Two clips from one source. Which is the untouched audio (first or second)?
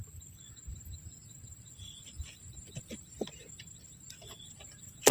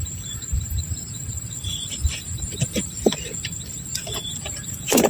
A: first